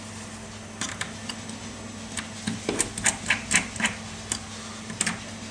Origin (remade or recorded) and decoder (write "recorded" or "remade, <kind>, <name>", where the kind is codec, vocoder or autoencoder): recorded